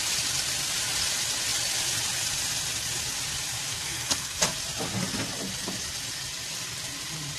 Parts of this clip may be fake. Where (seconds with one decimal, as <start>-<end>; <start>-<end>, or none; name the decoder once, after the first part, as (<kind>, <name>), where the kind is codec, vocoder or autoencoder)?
3.7-4.4 (codec, SNAC)

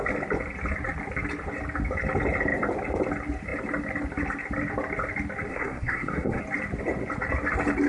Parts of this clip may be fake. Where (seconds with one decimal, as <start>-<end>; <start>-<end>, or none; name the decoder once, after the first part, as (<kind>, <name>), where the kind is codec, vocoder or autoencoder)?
5.5-6.4 (codec, SNAC)